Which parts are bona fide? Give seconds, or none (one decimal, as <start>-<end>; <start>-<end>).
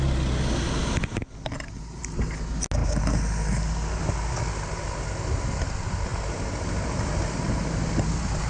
0.0-8.5